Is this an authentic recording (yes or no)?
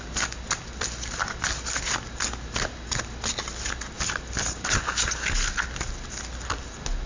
yes